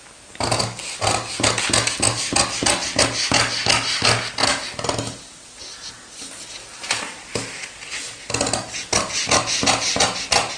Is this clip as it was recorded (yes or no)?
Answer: yes